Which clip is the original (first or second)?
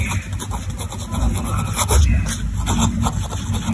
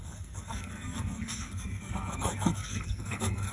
first